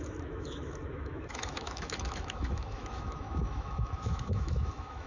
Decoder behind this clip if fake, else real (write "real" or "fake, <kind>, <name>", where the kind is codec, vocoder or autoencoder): fake, autoencoder, DAC-VAE